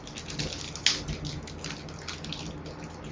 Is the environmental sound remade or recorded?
recorded